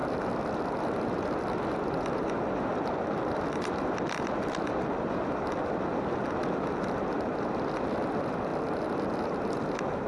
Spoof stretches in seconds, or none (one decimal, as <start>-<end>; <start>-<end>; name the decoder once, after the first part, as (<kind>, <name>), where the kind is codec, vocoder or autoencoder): none